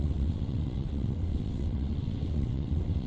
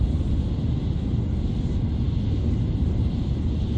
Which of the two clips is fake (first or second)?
first